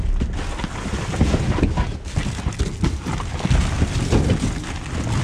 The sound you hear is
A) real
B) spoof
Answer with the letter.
A